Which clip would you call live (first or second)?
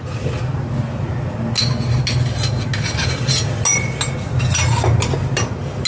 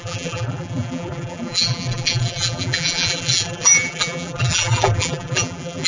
first